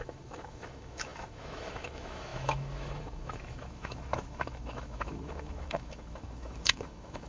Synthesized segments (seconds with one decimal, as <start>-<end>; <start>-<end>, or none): 0.0-7.3